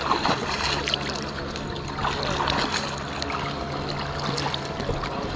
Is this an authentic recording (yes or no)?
yes